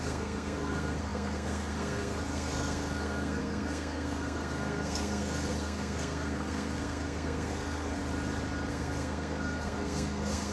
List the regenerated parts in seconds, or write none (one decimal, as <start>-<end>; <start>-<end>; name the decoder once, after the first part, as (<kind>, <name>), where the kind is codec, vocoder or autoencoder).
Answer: 0.0-8.0 (codec, SNAC); 8.7-10.5

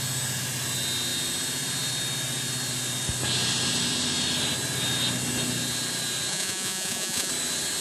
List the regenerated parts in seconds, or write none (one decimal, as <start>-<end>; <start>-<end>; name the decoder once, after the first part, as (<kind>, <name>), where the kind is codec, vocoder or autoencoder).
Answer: 6.3-7.3 (vocoder, Vocos)

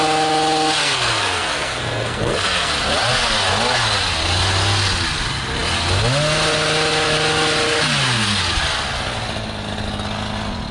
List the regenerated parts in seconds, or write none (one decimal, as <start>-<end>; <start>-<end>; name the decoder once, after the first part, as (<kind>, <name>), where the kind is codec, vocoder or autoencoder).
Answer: 0.8-2.7 (codec, SNAC)

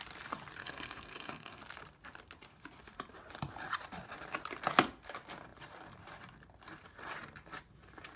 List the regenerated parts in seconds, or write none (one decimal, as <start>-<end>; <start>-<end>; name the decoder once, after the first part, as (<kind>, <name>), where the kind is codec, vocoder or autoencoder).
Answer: 0.6-1.6 (codec, SNAC)